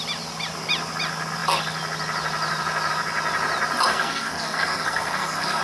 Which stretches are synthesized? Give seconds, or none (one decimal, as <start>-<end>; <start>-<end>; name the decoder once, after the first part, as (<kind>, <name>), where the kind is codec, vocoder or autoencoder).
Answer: 3.9-5.6 (codec, SNAC)